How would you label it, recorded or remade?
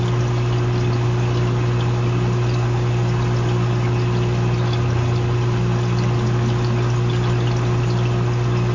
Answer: recorded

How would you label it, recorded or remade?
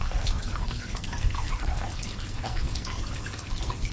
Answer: remade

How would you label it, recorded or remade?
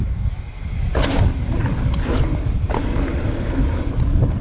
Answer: recorded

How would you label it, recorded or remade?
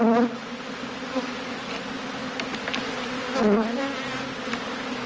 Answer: recorded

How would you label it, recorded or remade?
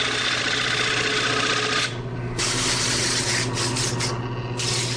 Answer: recorded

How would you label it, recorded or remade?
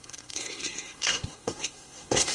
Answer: remade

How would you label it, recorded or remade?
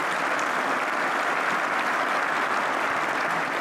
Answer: recorded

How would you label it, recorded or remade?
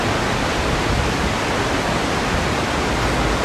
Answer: recorded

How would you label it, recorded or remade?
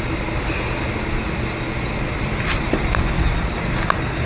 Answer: recorded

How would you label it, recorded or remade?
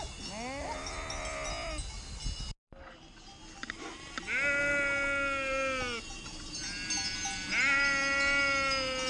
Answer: recorded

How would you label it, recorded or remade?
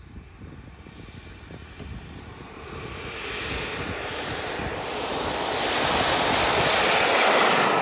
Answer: recorded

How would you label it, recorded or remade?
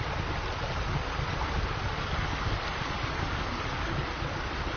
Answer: recorded